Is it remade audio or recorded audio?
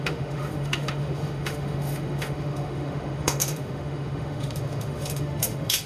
remade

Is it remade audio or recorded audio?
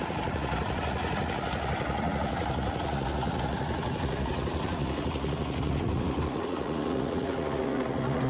remade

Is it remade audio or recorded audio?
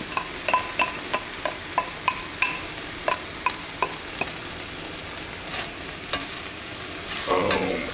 recorded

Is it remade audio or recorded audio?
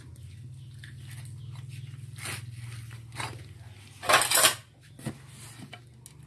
recorded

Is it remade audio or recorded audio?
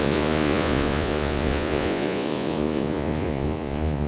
remade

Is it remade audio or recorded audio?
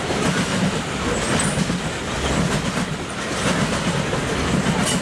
recorded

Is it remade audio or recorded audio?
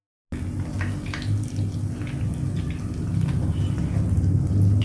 recorded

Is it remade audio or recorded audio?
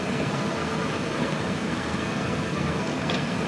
remade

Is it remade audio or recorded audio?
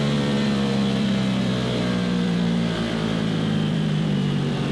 remade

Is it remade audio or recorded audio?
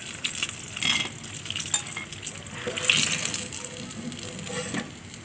recorded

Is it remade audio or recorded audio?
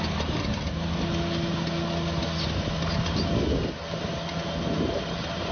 recorded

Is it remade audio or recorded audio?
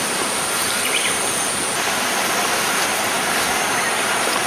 recorded